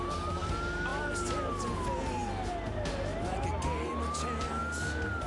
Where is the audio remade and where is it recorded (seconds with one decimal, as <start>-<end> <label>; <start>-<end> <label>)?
0.0-5.3 recorded